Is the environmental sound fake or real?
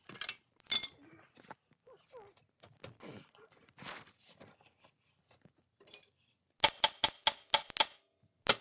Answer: real